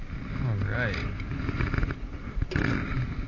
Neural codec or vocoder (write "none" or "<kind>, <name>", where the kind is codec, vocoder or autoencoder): none